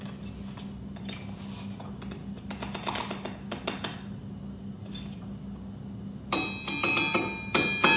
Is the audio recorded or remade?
recorded